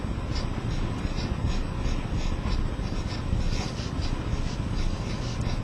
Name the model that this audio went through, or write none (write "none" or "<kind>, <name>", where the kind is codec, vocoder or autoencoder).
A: none